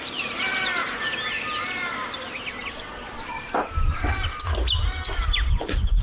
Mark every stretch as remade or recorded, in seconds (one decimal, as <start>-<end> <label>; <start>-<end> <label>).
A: 0.0-6.0 recorded